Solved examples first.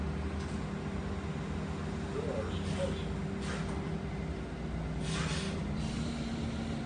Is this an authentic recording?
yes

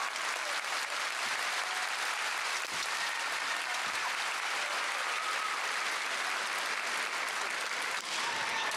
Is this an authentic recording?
yes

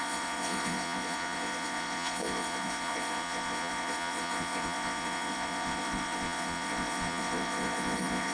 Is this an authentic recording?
no